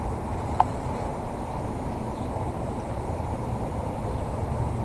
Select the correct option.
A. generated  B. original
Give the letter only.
A